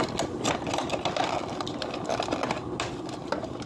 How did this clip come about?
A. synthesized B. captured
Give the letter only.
B